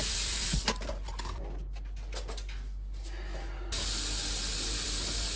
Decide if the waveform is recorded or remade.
recorded